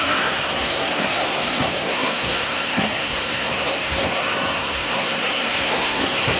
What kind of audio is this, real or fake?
fake